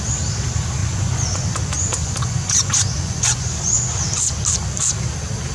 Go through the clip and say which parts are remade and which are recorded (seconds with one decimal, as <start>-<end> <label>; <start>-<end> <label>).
0.0-0.8 recorded; 0.8-3.8 remade; 3.8-5.5 recorded